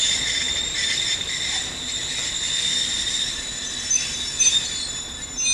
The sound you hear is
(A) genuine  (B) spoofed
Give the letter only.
A